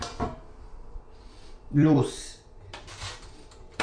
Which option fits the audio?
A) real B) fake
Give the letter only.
B